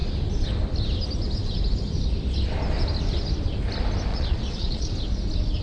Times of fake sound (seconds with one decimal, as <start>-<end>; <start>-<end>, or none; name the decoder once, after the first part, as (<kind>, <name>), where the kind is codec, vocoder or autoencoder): 4.1-4.9 (vocoder, Vocos)